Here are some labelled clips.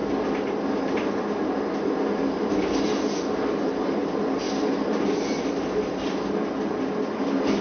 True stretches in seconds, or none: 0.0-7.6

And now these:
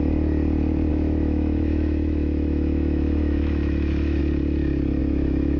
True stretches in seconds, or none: 0.0-0.9; 4.2-5.0